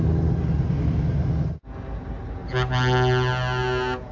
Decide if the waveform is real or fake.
real